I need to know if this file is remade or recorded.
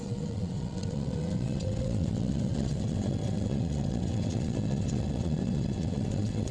remade